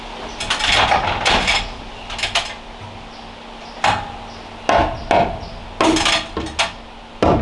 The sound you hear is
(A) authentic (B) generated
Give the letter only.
A